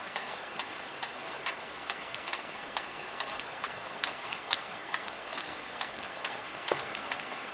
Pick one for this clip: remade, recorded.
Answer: remade